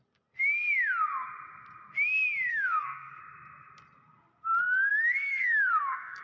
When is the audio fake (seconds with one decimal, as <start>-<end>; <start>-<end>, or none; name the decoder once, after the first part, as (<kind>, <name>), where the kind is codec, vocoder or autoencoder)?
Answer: 2.5-3.2 (codec, SNAC); 4.9-6.2